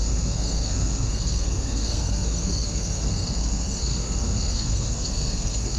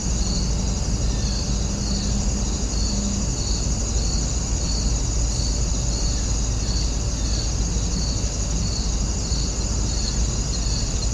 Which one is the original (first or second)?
second